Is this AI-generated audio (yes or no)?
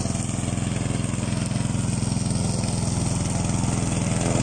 no